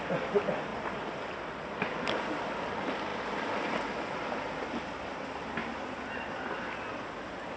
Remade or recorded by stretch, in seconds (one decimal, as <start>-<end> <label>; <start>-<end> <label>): 0.0-0.7 remade; 0.7-1.3 recorded; 1.3-3.1 remade; 3.1-4.9 recorded; 4.9-7.6 remade

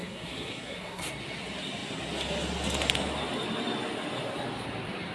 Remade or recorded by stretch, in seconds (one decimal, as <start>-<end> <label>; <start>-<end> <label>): 0.0-1.0 remade; 1.0-5.1 recorded

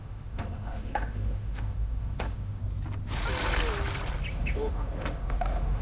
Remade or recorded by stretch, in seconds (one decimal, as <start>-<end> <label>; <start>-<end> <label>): 0.0-2.6 remade; 2.6-4.3 recorded; 4.3-5.8 remade

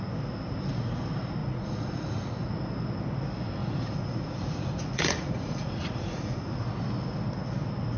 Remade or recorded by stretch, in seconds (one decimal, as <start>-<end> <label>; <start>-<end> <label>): 0.0-1.4 recorded; 1.4-2.2 remade; 2.2-3.6 recorded; 3.6-6.5 remade; 6.5-8.0 recorded

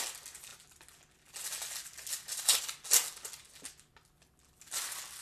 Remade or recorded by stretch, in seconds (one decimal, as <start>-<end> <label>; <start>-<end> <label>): 0.0-5.2 recorded